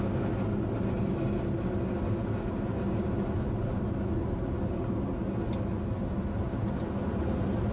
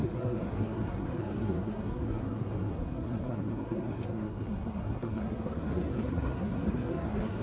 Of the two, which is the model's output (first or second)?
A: second